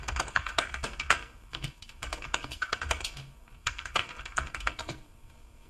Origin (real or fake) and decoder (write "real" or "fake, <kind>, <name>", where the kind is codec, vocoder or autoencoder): fake, codec, SNAC